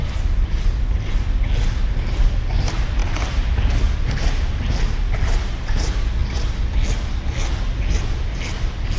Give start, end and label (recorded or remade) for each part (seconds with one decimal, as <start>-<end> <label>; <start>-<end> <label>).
0.0-9.0 recorded